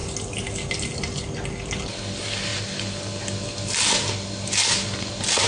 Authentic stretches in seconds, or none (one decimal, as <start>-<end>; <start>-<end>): 0.0-5.5

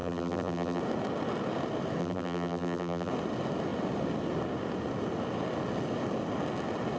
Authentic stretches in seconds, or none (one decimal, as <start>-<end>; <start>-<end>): 0.8-2.0; 3.1-7.0

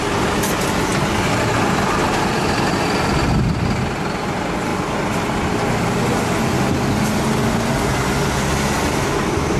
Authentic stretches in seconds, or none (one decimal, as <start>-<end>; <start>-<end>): 0.0-9.6

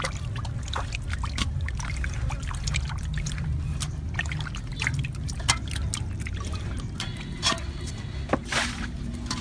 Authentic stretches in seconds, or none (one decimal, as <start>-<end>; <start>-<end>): 0.0-9.4

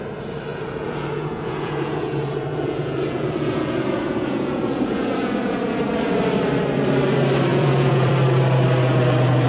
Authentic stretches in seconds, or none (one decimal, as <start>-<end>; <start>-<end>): 0.0-0.5; 5.8-7.5; 8.1-9.5